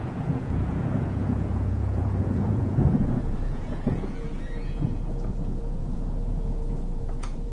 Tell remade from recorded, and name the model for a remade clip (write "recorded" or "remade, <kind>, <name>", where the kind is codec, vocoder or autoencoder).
remade, vocoder, Vocos